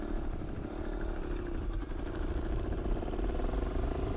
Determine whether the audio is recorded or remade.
recorded